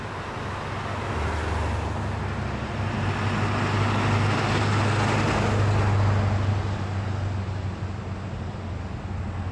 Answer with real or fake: real